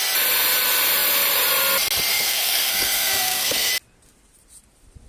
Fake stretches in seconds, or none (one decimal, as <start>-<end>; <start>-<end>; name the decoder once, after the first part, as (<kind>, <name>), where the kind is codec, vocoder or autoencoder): 2.1-3.7 (codec, SNAC)